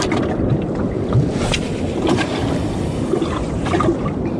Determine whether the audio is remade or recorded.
recorded